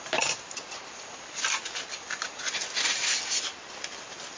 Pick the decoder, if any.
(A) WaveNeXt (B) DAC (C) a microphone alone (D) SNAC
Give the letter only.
C